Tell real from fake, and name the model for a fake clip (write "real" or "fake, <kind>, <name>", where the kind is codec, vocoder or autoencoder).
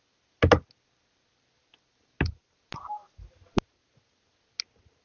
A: real